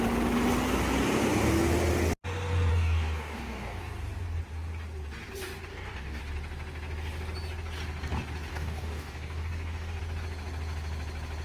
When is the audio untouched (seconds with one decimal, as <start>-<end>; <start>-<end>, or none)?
0.0-2.7; 3.8-5.7; 6.2-8.5; 10.0-11.4